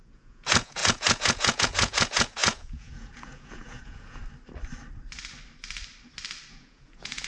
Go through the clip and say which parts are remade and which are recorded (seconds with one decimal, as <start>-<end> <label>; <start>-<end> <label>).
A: 0.0-4.2 remade; 4.2-6.5 recorded; 6.5-7.3 remade